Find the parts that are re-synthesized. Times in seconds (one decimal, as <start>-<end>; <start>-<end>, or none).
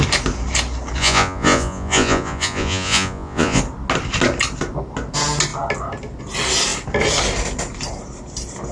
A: 1.0-3.6